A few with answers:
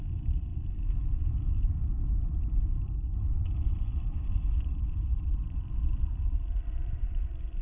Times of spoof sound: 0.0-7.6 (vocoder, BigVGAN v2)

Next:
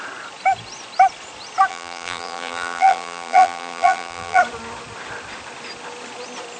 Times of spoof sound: 1.7-4.4 (vocoder, BigVGAN v2)